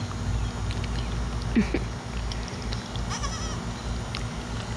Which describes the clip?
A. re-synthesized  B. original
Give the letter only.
B